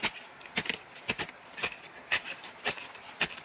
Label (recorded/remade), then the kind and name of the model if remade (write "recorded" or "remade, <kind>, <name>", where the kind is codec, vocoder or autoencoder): recorded